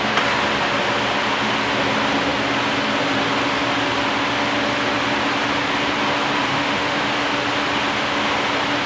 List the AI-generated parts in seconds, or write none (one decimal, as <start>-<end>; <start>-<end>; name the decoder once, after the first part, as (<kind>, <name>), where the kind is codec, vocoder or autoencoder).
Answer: 6.5-7.0 (autoencoder, DAC-VAE)